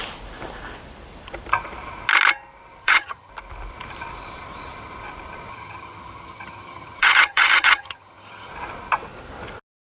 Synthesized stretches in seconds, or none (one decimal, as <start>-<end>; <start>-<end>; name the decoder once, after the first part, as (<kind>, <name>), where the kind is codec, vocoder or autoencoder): 2.8-3.3 (vocoder, HiFi-GAN); 5.5-8.5